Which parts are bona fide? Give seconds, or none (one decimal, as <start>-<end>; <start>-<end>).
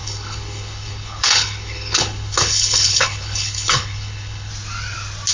4.5-5.3